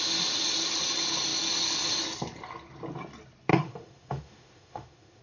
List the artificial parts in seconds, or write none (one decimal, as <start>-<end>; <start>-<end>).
3.5-5.2